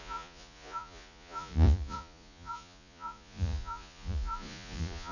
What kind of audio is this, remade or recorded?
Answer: remade